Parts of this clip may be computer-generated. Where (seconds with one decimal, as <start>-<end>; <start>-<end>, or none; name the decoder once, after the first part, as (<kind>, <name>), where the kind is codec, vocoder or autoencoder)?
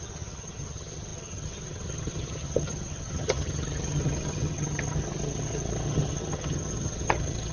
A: 0.0-7.5 (vocoder, HiFi-GAN)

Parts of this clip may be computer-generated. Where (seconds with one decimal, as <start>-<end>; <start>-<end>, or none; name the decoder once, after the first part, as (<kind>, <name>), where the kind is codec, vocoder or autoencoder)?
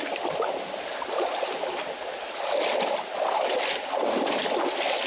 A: none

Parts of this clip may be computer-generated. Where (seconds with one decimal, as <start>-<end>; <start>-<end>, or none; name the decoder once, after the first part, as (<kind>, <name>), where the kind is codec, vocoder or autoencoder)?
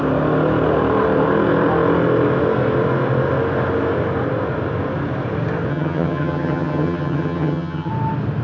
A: 5.7-7.9 (vocoder, HiFi-GAN)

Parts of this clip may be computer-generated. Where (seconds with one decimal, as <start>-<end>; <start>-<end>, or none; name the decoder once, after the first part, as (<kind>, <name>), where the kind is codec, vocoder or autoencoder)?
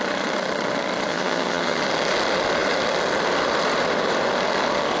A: 1.1-1.8 (vocoder, HiFi-GAN)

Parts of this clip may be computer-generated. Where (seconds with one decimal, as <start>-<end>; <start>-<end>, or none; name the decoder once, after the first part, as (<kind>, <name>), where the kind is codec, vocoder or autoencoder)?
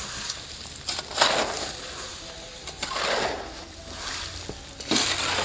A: none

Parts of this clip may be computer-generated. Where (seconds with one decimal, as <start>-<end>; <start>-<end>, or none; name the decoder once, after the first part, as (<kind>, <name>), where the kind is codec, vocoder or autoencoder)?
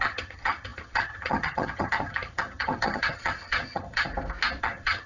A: 0.0-4.1 (vocoder, HiFi-GAN); 4.6-5.1